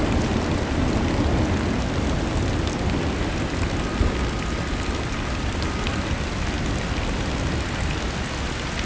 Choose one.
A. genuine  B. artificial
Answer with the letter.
A